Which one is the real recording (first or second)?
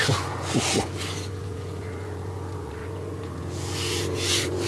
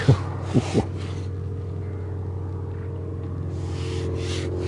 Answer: second